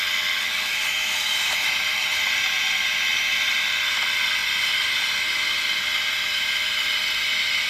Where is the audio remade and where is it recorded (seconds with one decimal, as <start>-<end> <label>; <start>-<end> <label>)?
0.0-0.7 recorded; 0.7-3.8 remade; 3.8-4.4 recorded; 4.4-7.7 remade